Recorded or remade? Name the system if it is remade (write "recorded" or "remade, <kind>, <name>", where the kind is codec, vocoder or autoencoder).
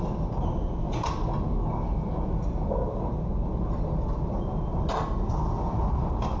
recorded